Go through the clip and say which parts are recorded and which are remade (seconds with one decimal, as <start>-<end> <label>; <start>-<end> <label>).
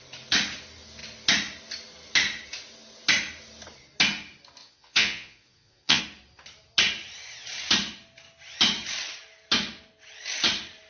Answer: 0.0-4.6 recorded; 4.6-6.0 remade; 6.0-10.9 recorded